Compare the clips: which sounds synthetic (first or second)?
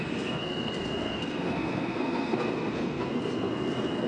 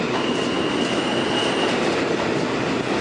first